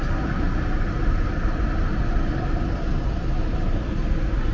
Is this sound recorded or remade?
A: recorded